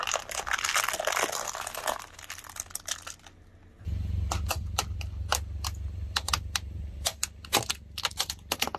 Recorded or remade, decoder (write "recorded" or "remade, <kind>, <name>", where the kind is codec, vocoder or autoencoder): recorded